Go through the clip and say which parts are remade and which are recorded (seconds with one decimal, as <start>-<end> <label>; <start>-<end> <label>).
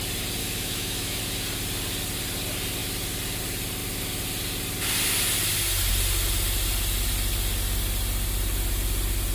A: 0.0-0.4 recorded; 0.4-1.2 remade; 1.2-9.3 recorded